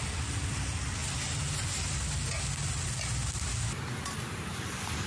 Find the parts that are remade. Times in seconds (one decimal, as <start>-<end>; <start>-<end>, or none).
none